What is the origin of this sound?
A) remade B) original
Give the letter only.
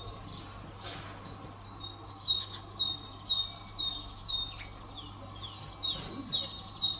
B